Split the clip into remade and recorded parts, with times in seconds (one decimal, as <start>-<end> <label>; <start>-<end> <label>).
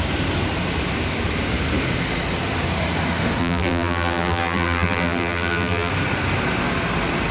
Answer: 0.0-3.4 recorded; 3.4-5.9 remade; 5.9-7.3 recorded